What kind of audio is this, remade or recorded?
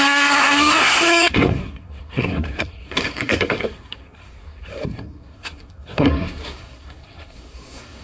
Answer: remade